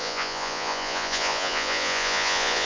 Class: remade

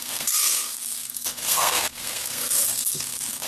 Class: remade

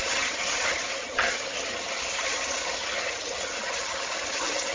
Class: remade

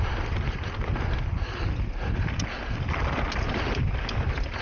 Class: recorded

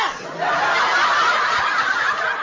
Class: recorded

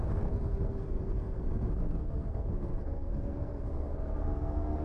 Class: remade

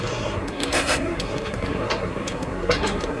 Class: remade